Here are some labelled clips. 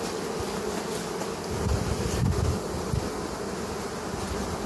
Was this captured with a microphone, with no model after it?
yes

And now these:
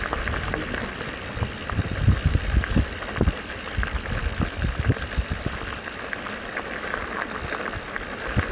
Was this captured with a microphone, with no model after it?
yes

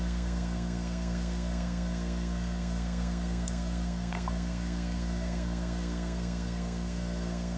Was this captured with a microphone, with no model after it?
no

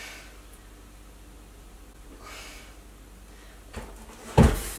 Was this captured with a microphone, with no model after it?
yes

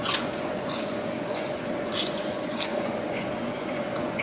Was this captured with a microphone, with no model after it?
no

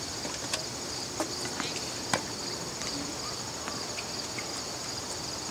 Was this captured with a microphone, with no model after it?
yes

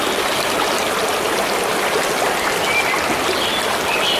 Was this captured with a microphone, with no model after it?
yes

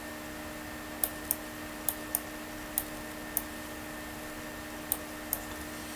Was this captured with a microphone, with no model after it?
yes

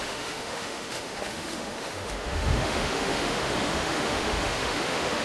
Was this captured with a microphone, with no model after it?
no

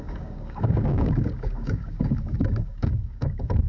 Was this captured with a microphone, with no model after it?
no